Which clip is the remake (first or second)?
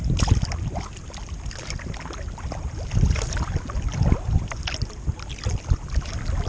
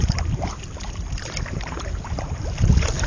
second